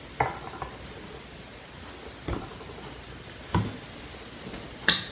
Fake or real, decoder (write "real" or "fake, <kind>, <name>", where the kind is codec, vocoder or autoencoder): real